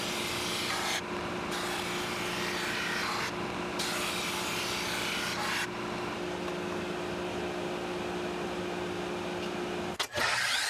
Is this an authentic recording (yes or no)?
yes